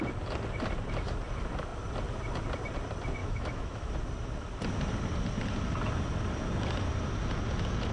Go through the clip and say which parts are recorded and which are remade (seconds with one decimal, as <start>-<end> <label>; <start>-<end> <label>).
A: 0.0-3.2 recorded; 3.2-3.9 remade; 3.9-7.9 recorded